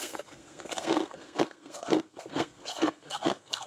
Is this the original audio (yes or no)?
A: no